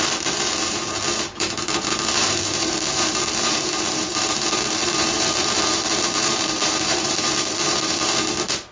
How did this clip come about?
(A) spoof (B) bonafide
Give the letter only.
A